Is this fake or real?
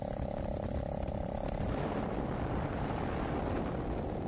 real